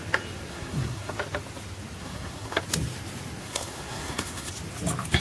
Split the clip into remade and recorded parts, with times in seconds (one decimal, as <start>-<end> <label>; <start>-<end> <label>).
0.0-0.5 recorded; 0.5-1.2 remade; 1.2-2.0 recorded; 2.0-2.6 remade; 2.6-3.4 recorded; 3.4-4.5 remade; 4.5-5.2 recorded